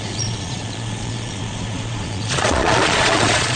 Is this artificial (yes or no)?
yes